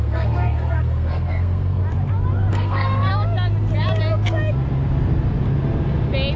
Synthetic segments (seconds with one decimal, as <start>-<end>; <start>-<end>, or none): 0.0-1.8; 2.5-3.1